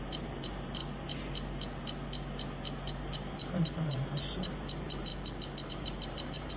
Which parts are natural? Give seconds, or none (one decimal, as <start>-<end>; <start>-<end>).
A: 0.8-2.8; 5.1-5.7